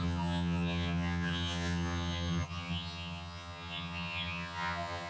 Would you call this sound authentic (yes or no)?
no